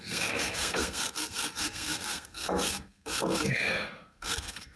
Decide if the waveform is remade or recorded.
remade